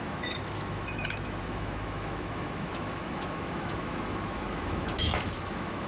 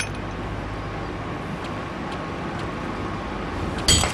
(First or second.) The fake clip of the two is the first